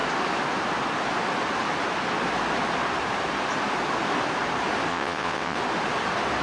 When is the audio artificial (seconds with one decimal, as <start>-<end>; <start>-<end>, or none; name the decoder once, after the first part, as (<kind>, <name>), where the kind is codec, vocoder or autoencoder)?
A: 4.9-5.6 (vocoder, WaveNeXt)